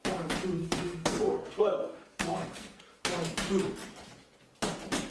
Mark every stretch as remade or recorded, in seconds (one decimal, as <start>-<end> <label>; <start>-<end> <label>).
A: 0.0-0.6 recorded; 0.6-2.8 remade; 2.8-5.1 recorded